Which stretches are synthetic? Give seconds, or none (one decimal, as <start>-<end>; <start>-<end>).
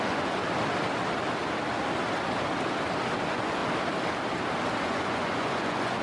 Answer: 0.0-0.4; 3.2-3.6; 4.8-6.0